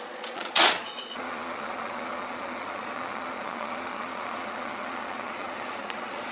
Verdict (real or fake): fake